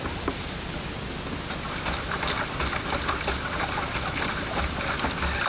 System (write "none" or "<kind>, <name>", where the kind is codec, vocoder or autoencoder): none